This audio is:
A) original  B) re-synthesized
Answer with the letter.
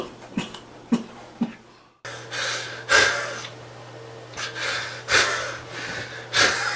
A